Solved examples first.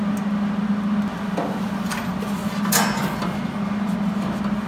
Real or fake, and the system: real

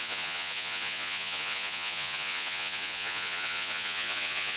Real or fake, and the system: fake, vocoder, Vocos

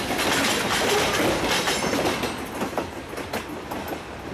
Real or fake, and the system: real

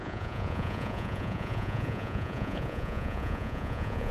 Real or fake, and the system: fake, vocoder, Vocos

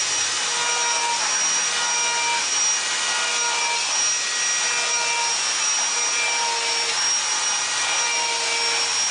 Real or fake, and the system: real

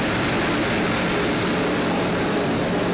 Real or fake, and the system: real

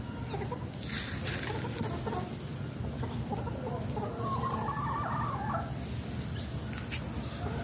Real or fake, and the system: real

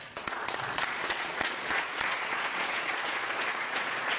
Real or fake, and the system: fake, vocoder, Vocos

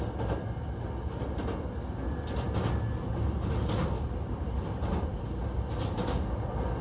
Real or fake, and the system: real